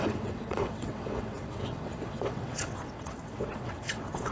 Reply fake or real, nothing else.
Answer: fake